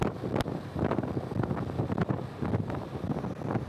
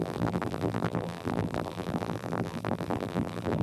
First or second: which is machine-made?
second